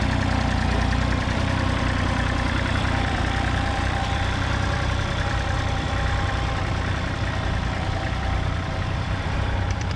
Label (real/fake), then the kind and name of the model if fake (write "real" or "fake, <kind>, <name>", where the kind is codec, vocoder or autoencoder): fake, vocoder, BigVGAN v2